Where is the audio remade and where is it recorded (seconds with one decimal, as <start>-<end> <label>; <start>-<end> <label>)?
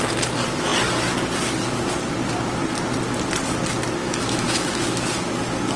0.0-4.0 recorded; 4.0-5.3 remade; 5.3-5.8 recorded